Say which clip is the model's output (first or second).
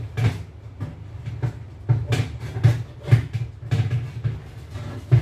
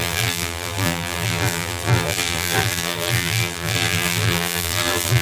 second